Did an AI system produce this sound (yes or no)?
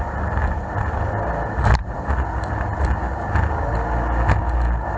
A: no